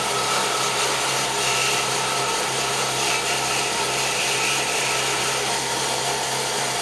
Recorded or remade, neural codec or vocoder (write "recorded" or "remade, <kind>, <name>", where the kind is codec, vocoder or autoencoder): recorded